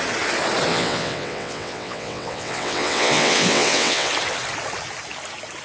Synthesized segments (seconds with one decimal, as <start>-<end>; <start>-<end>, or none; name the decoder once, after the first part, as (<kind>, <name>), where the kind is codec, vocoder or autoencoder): 0.7-4.1 (vocoder, WaveNeXt)